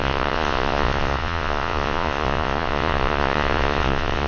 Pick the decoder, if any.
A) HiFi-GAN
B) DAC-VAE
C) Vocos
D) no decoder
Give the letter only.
C